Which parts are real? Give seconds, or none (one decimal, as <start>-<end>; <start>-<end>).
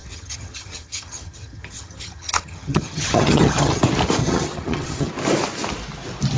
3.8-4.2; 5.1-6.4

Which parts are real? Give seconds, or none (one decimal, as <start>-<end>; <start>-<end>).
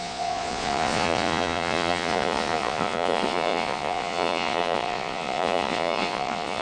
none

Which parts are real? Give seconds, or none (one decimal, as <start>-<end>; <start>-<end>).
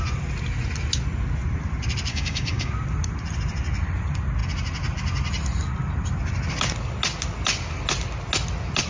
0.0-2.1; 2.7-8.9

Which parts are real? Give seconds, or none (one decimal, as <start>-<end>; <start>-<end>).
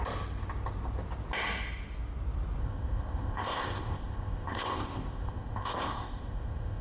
0.0-2.6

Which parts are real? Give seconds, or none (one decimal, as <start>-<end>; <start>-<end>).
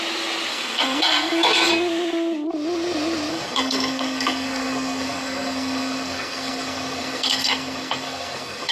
0.0-0.5; 1.7-3.3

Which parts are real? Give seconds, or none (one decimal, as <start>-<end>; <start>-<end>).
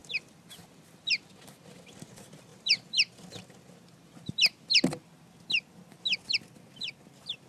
0.0-7.5